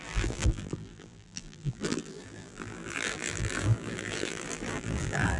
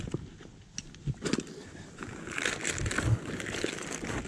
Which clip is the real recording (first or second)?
second